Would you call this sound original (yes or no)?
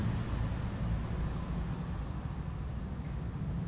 yes